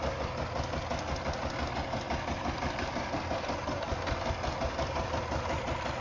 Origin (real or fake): real